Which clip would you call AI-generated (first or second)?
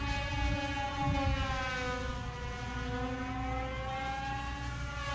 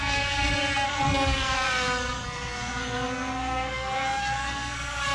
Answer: second